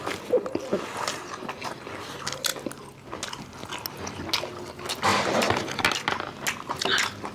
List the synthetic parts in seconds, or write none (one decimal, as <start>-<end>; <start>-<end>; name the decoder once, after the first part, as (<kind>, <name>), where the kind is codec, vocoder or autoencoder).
none